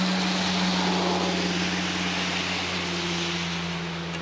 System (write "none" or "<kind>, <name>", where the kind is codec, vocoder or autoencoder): none